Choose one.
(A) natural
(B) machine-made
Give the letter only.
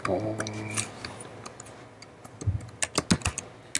A